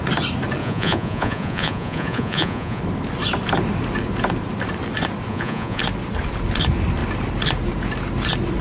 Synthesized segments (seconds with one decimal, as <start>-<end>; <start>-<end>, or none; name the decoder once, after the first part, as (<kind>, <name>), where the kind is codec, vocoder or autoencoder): 0.6-2.8 (vocoder, Vocos); 5.3-5.8